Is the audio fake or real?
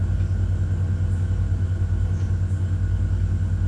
real